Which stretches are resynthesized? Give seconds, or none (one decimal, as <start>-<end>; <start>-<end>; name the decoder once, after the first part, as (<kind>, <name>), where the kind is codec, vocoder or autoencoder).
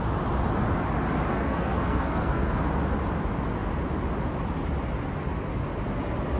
1.3-2.6 (codec, SNAC)